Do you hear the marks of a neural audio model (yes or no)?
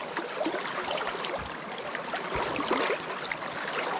no